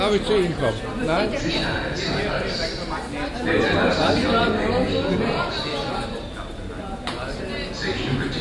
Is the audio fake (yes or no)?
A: no